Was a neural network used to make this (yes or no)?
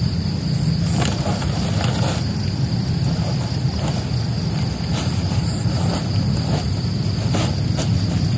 no